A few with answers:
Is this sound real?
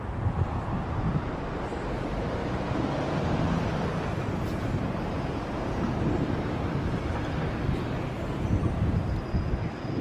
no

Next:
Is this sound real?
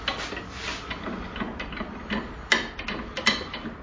yes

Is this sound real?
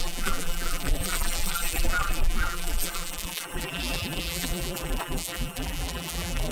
no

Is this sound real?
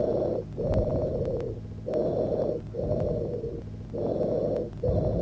yes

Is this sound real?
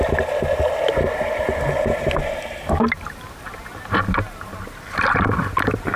yes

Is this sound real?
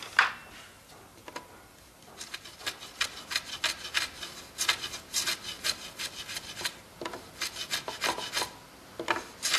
yes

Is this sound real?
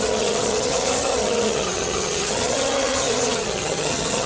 no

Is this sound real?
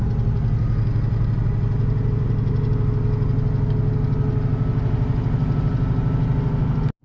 yes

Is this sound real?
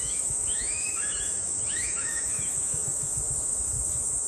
no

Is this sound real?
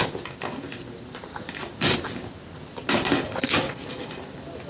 yes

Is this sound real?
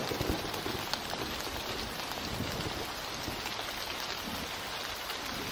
yes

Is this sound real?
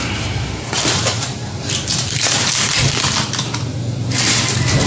no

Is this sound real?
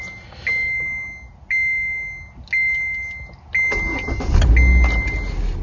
yes